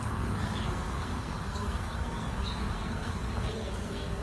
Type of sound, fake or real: fake